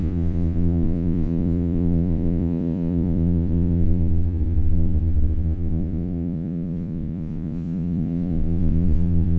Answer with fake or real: fake